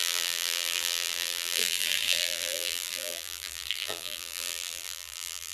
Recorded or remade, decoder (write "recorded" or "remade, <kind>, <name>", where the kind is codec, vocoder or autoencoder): remade, vocoder, BigVGAN v2